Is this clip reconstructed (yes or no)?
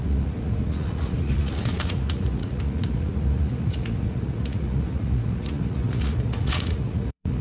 yes